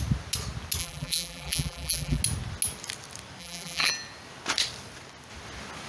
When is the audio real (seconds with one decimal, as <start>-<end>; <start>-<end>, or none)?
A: 0.0-0.8; 2.2-3.4; 3.9-5.9